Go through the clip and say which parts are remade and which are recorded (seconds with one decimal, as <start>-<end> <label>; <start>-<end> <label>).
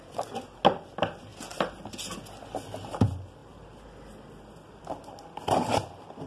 0.0-3.4 recorded; 3.4-4.8 remade; 4.8-6.3 recorded